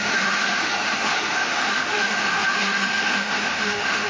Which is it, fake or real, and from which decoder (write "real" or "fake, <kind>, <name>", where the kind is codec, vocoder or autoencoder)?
fake, autoencoder, DAC-VAE